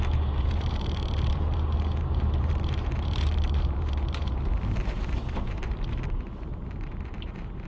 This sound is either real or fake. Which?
fake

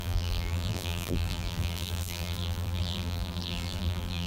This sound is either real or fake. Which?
fake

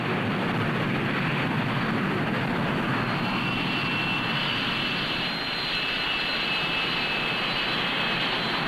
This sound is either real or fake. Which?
real